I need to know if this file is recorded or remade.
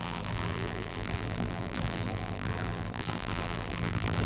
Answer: remade